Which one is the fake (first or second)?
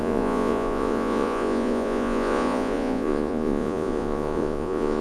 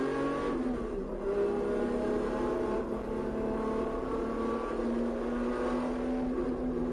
first